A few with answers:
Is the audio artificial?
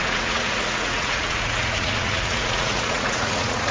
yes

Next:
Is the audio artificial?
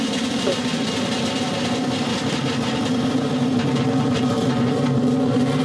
yes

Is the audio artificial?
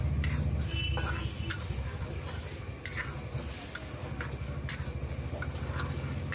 no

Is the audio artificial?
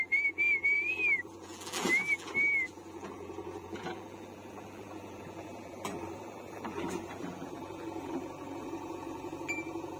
yes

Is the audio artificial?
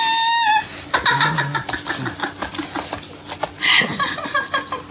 no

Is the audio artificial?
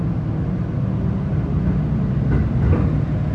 no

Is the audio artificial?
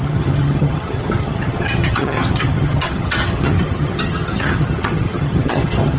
yes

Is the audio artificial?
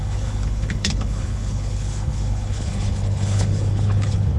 yes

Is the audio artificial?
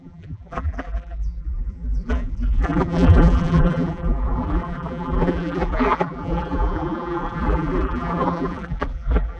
yes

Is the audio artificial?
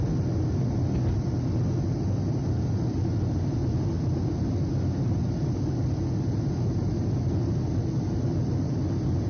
no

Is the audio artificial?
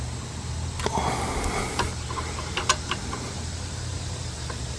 no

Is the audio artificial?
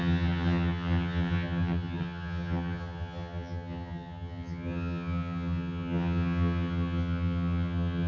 yes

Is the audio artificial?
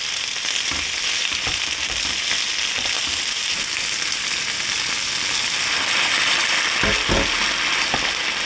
no